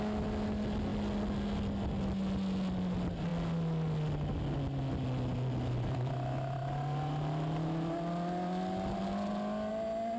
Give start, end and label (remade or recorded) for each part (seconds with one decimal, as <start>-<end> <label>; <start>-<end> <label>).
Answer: 0.0-10.2 recorded